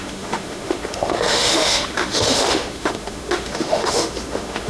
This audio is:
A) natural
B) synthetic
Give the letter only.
B